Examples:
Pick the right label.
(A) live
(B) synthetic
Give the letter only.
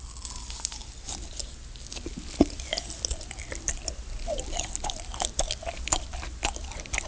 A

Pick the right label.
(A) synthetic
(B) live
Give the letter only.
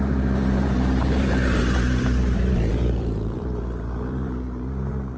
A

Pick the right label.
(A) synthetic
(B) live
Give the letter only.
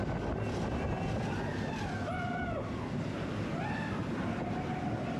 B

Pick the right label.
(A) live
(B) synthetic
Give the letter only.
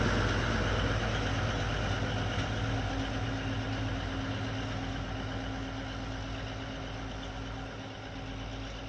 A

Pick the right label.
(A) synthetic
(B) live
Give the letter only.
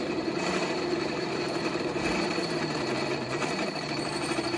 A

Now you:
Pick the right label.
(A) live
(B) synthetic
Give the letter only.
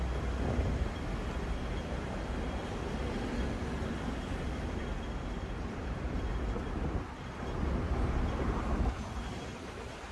A